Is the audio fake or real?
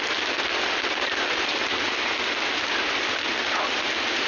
real